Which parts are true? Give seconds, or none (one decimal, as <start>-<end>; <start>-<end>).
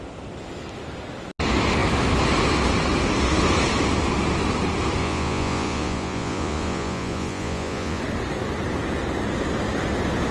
0.0-5.0; 8.0-10.3